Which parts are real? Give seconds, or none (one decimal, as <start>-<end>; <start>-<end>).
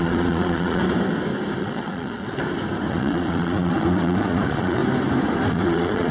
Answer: 0.8-1.6; 2.4-2.9; 4.8-5.5